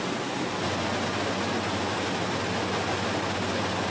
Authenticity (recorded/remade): recorded